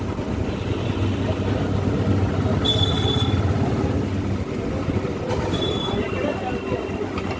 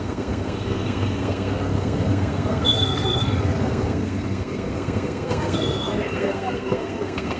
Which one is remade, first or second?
second